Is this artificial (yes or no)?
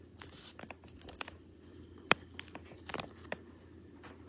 no